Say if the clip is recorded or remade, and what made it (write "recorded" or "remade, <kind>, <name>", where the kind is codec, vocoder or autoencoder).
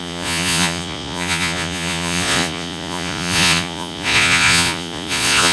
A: remade, vocoder, Vocos